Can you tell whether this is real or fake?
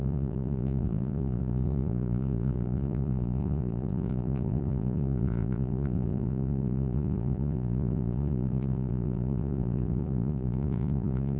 fake